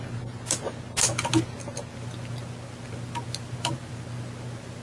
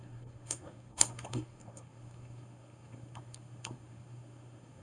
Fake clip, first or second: second